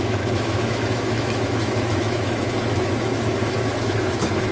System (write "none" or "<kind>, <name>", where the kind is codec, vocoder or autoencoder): autoencoder, DAC-VAE